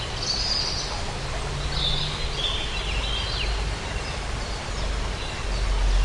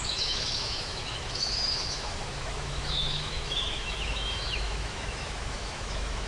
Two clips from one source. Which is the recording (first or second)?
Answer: first